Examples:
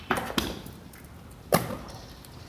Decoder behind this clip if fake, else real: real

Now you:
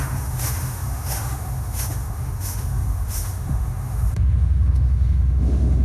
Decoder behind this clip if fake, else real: fake, autoencoder, DAC-VAE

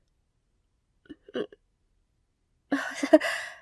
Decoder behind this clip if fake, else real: real